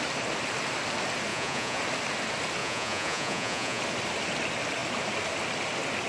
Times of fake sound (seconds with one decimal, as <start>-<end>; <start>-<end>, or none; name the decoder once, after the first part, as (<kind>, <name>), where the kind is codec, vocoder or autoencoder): 1.3-1.8 (vocoder, Vocos); 2.6-3.8